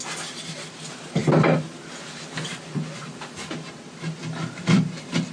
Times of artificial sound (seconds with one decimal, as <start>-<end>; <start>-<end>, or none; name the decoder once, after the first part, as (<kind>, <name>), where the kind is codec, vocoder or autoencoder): 4.4-5.3 (vocoder, BigVGAN v2)